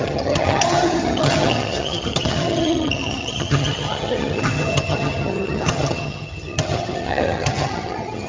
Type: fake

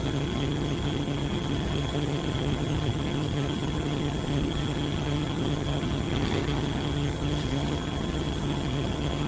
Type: fake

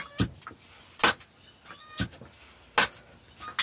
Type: real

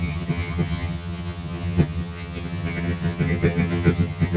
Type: fake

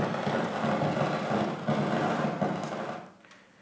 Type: real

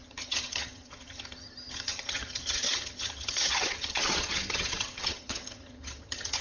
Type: fake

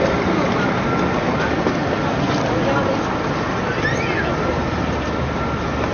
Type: real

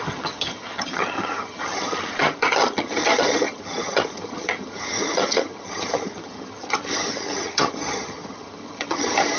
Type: fake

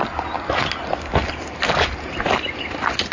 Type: real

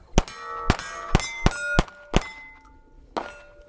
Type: real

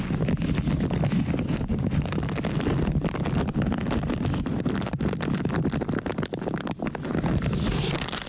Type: real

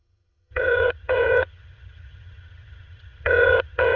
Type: fake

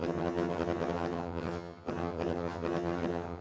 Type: fake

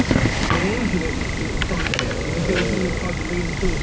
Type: real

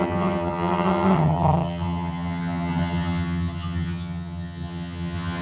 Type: fake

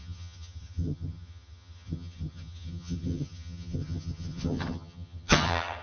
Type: fake